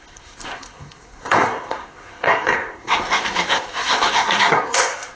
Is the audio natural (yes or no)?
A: no